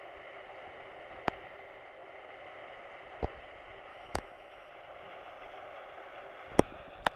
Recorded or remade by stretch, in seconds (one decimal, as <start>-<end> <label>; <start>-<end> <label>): 0.0-3.9 recorded; 3.9-4.7 remade; 4.7-7.2 recorded